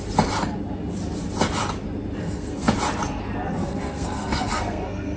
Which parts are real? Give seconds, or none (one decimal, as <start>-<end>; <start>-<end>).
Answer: 0.0-2.2; 2.7-3.6